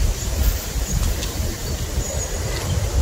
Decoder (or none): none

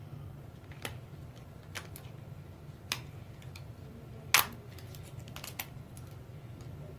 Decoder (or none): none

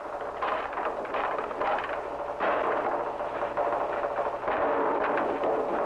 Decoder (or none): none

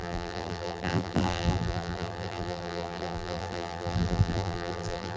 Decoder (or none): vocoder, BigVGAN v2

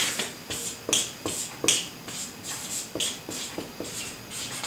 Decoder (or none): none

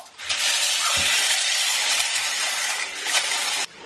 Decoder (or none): vocoder, BigVGAN v2